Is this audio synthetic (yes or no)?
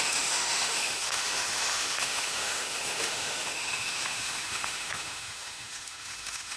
yes